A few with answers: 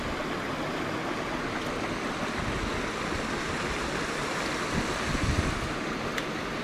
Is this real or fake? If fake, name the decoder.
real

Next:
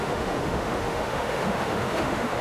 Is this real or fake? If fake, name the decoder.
fake, autoencoder, DAC-VAE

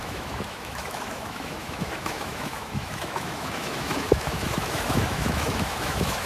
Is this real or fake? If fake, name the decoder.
fake, autoencoder, DAC-VAE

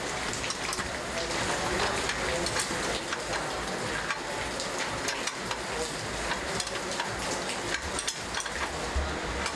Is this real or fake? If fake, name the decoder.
real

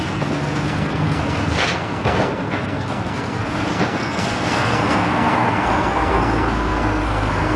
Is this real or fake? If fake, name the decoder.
fake, codec, SNAC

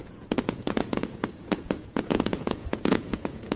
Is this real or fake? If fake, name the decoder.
fake, vocoder, Vocos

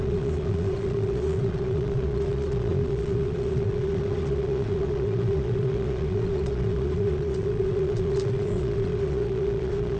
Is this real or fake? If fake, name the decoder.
fake, vocoder, Vocos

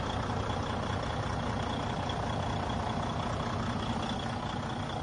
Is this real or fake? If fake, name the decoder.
real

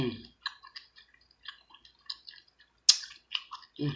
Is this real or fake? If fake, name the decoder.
real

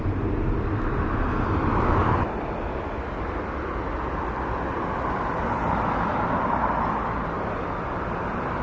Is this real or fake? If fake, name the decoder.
real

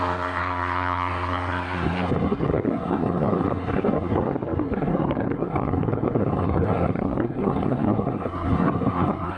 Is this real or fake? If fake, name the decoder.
fake, codec, SNAC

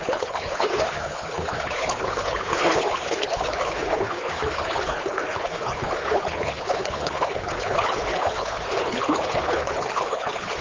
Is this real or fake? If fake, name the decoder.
fake, codec, HILCodec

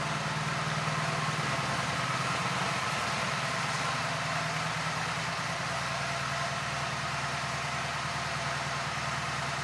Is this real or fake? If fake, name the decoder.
fake, vocoder, BigVGAN v2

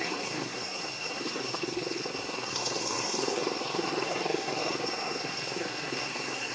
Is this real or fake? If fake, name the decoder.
fake, codec, SNAC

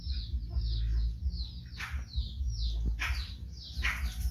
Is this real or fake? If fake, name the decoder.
real